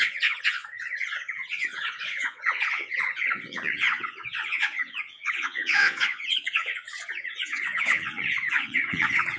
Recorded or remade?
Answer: remade